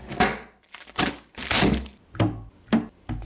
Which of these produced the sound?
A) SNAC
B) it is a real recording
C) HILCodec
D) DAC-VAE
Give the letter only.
B